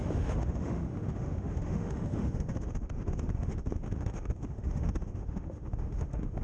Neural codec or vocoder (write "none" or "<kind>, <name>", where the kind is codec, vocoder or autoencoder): autoencoder, DAC-VAE